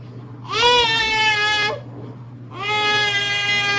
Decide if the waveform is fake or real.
real